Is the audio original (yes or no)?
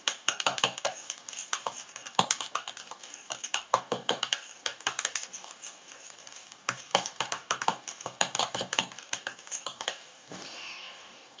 no